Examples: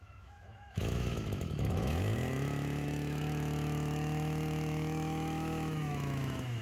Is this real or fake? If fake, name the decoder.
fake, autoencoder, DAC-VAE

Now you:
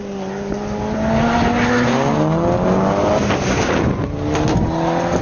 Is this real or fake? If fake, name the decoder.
real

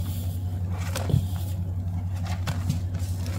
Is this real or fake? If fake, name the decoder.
real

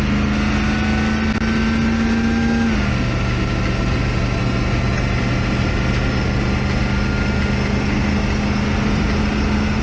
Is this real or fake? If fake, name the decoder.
real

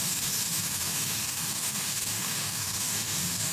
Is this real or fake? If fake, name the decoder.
fake, codec, DAC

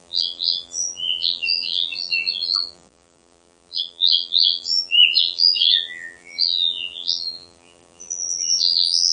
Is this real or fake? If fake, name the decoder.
fake, vocoder, BigVGAN v2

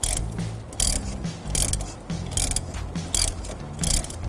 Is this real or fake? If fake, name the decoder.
real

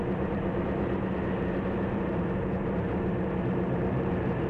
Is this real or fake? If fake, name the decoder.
fake, vocoder, BigVGAN v2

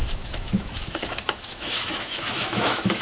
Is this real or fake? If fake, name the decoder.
fake, autoencoder, DAC-VAE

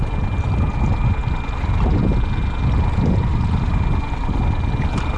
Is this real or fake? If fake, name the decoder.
real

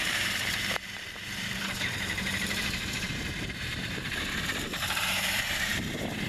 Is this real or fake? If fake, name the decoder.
fake, vocoder, BigVGAN v2